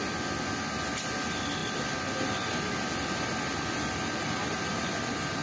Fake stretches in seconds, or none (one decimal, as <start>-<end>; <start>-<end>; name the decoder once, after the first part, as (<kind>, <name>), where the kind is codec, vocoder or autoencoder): none